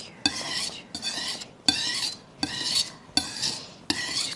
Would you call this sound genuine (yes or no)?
yes